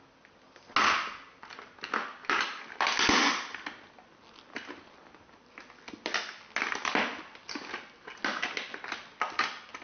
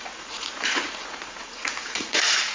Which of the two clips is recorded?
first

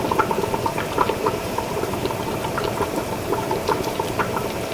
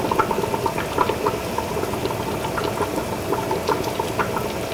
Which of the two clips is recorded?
second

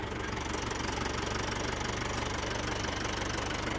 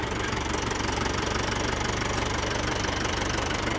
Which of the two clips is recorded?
first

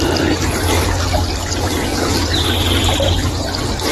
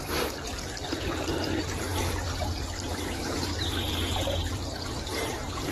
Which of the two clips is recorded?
first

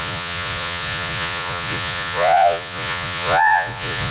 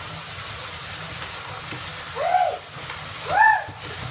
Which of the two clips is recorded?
second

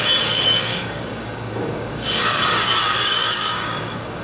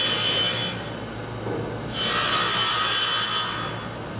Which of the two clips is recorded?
second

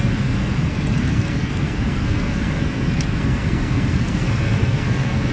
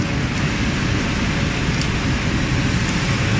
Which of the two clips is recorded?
second